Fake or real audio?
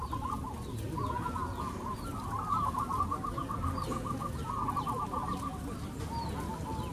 real